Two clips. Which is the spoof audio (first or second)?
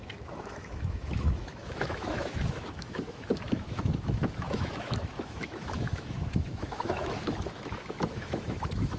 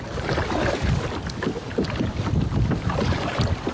first